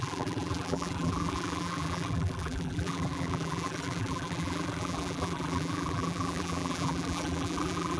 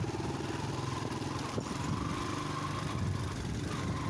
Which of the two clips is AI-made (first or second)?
first